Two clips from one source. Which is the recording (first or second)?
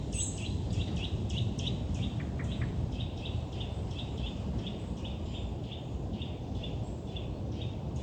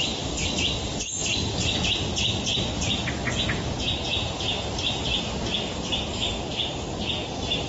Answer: second